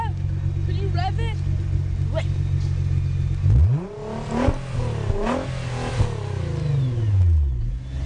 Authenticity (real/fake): real